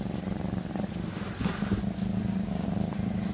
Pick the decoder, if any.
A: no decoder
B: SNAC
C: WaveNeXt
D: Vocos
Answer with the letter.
A